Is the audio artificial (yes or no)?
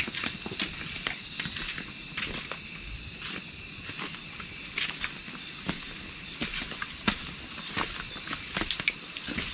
no